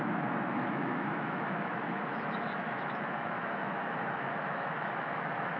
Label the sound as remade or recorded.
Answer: remade